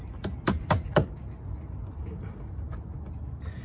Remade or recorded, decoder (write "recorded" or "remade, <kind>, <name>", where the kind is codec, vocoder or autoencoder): recorded